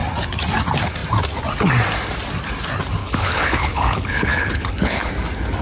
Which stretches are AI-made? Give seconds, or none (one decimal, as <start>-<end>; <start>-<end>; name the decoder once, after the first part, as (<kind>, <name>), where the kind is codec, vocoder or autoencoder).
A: 3.0-5.1 (codec, HILCodec)